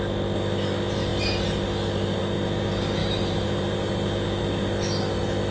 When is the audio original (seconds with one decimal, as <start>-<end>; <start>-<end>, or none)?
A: 0.0-3.0; 4.4-5.5